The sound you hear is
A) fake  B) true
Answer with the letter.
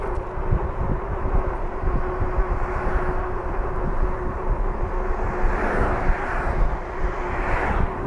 B